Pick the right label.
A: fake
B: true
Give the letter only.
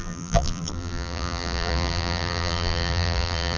A